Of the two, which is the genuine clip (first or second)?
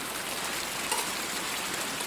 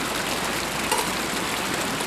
second